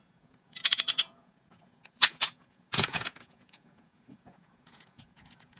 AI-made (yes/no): yes